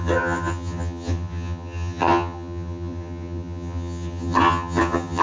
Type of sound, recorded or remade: remade